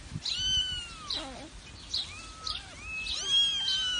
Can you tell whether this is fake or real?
real